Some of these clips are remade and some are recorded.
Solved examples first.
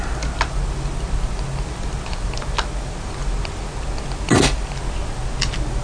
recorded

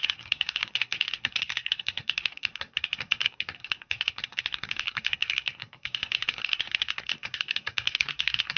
remade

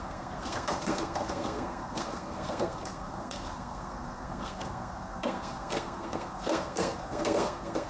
remade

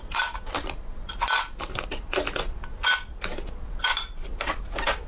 recorded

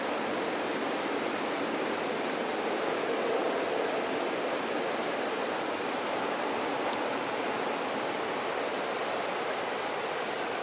recorded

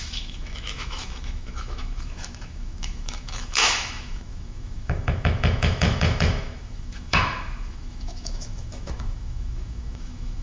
remade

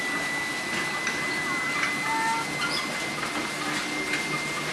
recorded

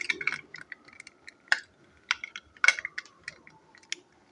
recorded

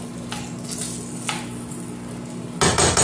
recorded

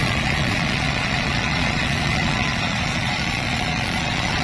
remade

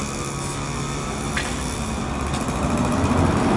recorded